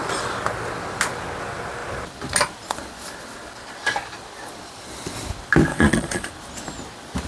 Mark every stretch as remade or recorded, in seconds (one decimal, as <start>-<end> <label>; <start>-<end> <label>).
0.0-5.7 recorded; 5.7-6.3 remade; 6.3-7.3 recorded